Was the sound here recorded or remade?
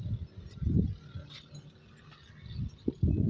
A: recorded